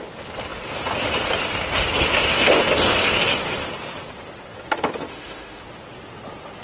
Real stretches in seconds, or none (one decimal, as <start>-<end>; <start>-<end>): 0.0-5.1; 5.6-6.6